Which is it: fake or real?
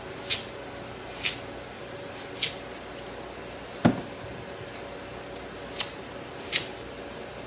real